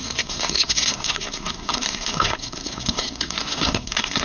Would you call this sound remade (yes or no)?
yes